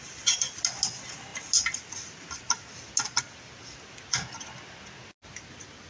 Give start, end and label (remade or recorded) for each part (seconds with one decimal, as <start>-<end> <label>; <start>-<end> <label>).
0.0-5.9 recorded